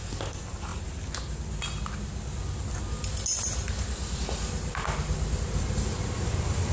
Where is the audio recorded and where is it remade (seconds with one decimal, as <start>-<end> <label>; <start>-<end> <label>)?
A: 0.0-6.7 recorded